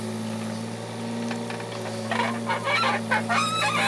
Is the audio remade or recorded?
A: recorded